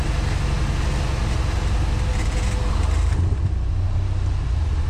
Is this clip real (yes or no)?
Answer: yes